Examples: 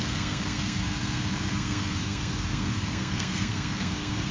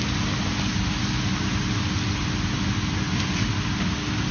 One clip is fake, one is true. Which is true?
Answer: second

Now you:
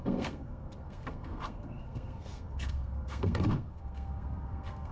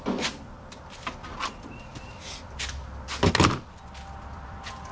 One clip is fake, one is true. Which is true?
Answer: second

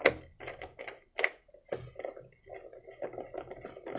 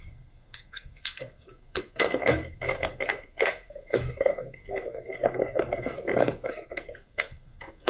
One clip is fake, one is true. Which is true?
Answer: first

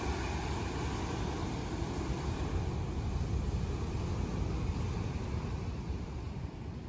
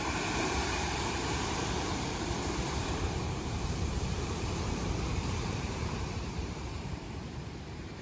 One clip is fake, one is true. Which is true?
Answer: first